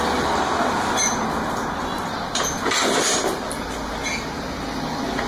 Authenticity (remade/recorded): recorded